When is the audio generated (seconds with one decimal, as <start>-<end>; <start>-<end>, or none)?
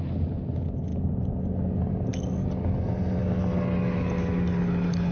none